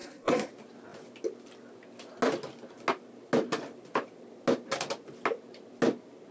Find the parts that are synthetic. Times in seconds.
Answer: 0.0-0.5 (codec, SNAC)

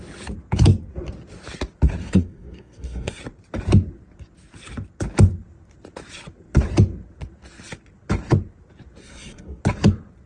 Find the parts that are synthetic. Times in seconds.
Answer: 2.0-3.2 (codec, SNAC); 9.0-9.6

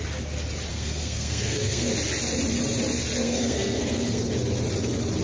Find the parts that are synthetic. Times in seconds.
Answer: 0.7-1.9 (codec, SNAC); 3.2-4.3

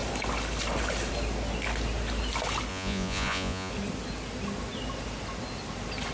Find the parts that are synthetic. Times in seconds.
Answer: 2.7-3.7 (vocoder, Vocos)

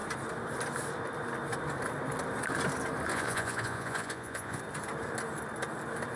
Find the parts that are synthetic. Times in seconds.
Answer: 3.1-4.6 (vocoder, Vocos)